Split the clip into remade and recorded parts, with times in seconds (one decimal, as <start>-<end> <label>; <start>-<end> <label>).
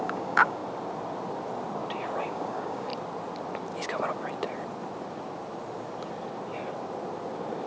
0.0-0.6 remade; 0.6-2.2 recorded; 2.2-2.9 remade; 2.9-7.7 recorded